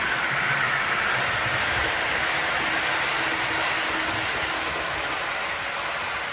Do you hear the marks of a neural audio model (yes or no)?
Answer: no